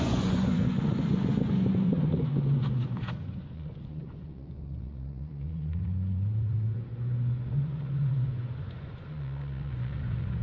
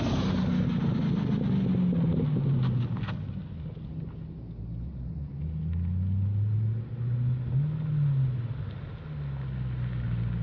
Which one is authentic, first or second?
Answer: second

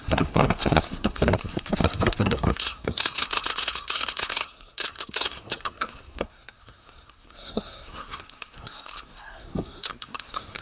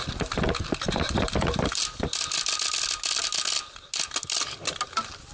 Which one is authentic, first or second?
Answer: second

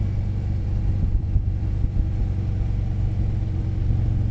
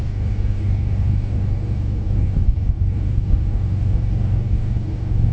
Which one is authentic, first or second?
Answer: first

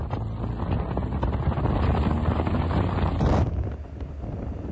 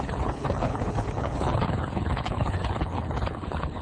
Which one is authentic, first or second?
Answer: first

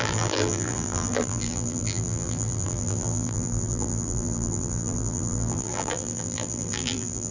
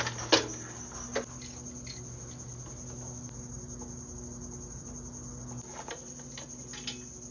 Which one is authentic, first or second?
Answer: second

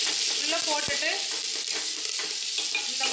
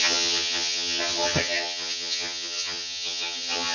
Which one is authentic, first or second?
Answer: first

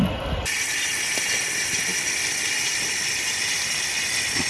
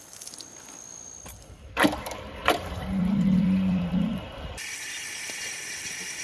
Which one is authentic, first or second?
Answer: first